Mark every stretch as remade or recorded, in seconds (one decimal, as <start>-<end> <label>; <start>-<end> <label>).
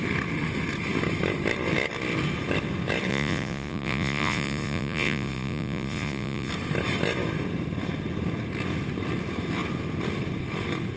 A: 0.0-3.1 recorded; 3.1-6.5 remade; 6.5-11.0 recorded